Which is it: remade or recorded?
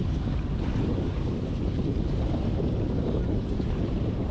remade